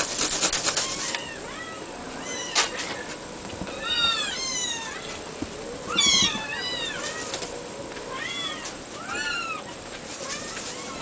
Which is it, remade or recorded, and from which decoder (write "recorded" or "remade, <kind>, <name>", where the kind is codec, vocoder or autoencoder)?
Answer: recorded